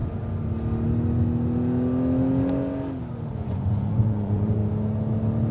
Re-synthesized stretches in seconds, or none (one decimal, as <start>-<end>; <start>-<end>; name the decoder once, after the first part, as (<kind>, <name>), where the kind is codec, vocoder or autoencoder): 3.3-4.6 (vocoder, Vocos)

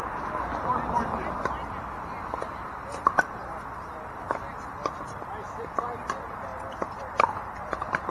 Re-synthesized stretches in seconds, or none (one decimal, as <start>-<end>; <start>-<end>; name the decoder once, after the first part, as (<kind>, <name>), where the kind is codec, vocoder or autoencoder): 6.5-8.1 (vocoder, BigVGAN v2)

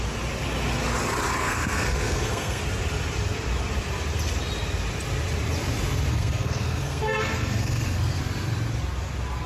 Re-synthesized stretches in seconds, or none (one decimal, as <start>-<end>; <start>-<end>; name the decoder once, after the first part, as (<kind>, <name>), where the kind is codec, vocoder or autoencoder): 1.4-2.6 (codec, SNAC); 6.1-8.2

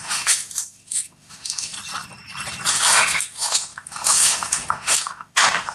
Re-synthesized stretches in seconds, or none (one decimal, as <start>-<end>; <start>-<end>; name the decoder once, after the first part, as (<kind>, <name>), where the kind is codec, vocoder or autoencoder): 0.0-1.7 (autoencoder, DAC-VAE); 2.7-5.7

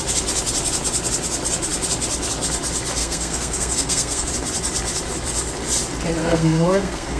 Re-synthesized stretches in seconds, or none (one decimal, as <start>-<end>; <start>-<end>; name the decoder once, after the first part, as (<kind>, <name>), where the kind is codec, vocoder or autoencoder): 3.0-4.3 (codec, SNAC); 6.2-7.2

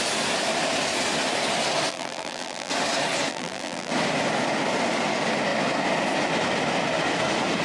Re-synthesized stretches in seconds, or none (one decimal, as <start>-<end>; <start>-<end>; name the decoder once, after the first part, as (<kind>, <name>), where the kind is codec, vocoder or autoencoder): 1.9-2.7 (vocoder, BigVGAN v2); 3.3-3.9

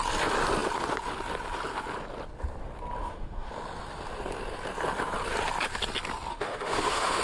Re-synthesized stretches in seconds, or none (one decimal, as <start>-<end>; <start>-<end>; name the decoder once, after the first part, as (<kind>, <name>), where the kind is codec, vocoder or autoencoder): 3.0-3.5 (autoencoder, DAC-VAE); 6.3-7.2